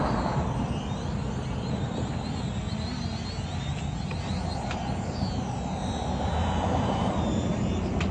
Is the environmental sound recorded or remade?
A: recorded